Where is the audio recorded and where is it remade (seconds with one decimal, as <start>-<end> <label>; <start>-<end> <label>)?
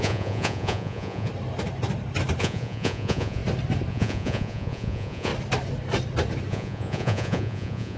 0.0-1.3 remade; 1.3-2.4 recorded; 2.4-3.4 remade; 3.4-3.9 recorded; 3.9-5.3 remade; 5.3-6.5 recorded; 6.5-8.0 remade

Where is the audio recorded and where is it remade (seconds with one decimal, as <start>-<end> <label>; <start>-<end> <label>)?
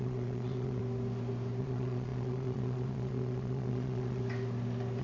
0.0-0.8 remade; 0.8-1.6 recorded; 1.6-4.2 remade; 4.2-5.0 recorded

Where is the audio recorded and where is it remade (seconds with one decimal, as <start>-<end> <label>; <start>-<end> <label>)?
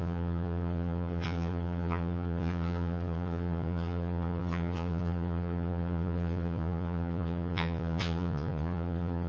0.0-9.3 remade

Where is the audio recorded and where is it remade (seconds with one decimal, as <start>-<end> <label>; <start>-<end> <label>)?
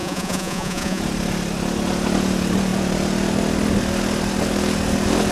0.0-1.0 remade; 1.0-5.3 recorded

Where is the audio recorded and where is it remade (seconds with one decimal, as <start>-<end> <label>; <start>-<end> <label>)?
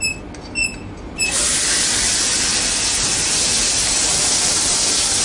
0.0-5.2 recorded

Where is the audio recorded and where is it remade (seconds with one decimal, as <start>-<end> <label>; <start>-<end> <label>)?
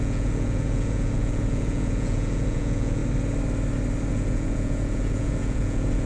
0.0-3.0 remade; 3.0-4.1 recorded; 4.1-6.1 remade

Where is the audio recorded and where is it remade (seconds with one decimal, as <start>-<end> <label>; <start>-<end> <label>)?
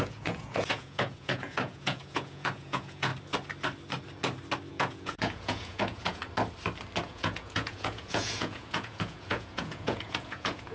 0.0-3.1 remade; 3.1-4.7 recorded; 4.7-6.2 remade; 6.2-7.0 recorded; 7.0-10.7 remade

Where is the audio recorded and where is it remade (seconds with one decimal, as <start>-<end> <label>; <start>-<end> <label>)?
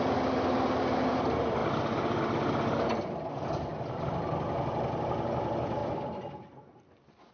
0.0-7.3 recorded